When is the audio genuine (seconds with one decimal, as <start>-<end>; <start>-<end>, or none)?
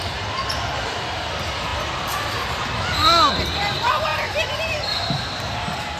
0.0-4.1